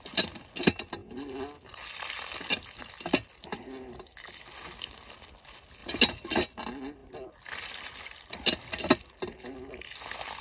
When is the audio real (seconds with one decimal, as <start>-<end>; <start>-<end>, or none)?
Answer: 0.0-10.4